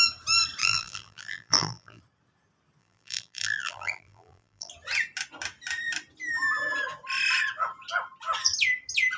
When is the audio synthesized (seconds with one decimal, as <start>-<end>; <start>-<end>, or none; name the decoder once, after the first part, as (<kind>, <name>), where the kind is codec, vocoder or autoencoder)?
0.6-2.0 (vocoder, BigVGAN v2); 2.8-4.7